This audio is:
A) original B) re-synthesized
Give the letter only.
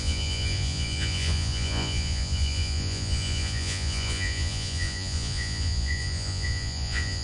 B